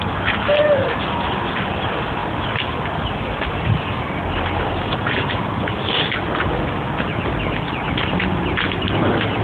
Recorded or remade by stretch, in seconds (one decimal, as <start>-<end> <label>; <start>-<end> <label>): 0.0-9.4 recorded